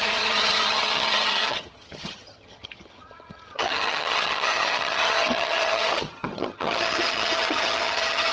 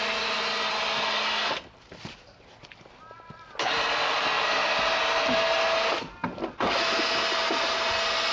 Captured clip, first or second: second